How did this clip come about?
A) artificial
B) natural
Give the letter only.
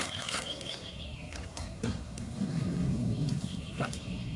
A